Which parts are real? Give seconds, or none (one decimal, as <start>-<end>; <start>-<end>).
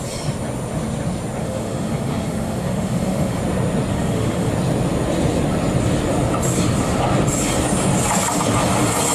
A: 0.0-1.4; 3.4-3.9; 4.5-9.1